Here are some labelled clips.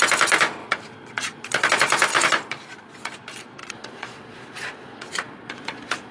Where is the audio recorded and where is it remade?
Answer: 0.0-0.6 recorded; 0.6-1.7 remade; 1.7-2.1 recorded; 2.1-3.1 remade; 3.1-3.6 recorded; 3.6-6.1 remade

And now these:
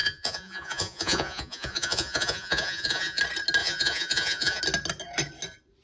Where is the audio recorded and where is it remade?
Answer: 0.0-3.2 remade; 3.2-3.6 recorded; 3.6-4.6 remade; 4.6-5.8 recorded

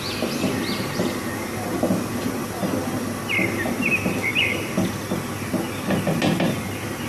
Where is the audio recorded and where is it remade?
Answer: 0.0-4.3 recorded; 4.3-6.2 remade; 6.2-7.1 recorded

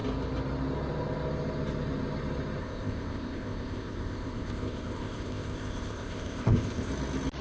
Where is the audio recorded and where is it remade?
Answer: 0.0-2.6 recorded; 2.6-6.9 remade; 6.9-7.4 recorded

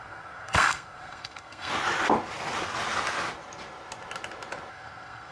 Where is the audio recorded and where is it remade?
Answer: 0.0-1.7 remade; 1.7-4.7 recorded; 4.7-5.3 remade

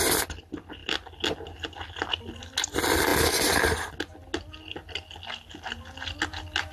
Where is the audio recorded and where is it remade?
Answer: 0.0-6.7 recorded